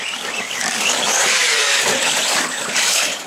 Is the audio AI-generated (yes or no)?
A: yes